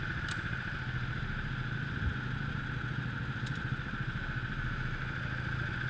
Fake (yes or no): no